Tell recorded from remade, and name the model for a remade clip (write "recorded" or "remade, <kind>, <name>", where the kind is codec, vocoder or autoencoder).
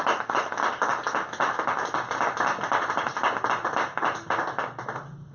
recorded